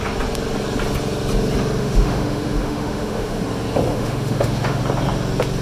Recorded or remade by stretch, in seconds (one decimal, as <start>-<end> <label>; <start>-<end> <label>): 0.0-1.8 recorded; 1.8-3.4 remade; 3.4-3.9 recorded; 3.9-4.8 remade; 4.8-5.6 recorded